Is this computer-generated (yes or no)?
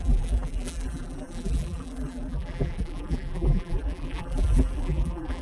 yes